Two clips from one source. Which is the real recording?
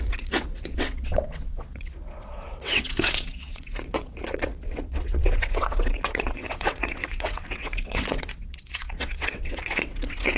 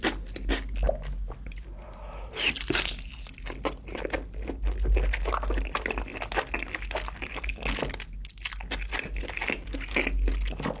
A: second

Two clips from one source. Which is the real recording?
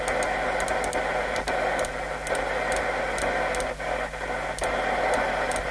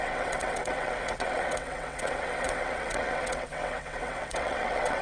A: first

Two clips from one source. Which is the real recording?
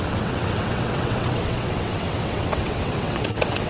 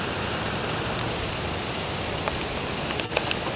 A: second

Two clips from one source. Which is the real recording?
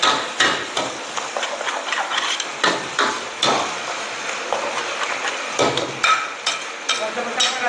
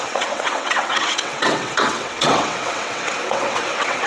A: first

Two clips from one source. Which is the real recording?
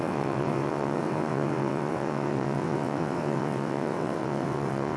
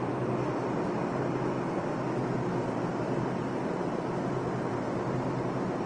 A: second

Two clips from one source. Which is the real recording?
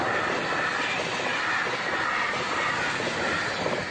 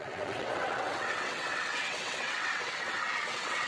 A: first